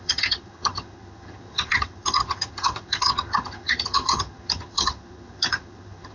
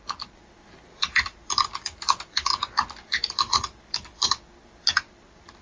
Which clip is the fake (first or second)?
first